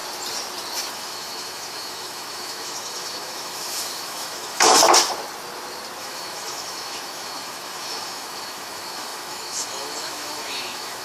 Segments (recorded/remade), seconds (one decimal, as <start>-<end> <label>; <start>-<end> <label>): 0.0-0.9 recorded; 0.9-4.8 remade; 4.8-6.0 recorded; 6.0-11.0 remade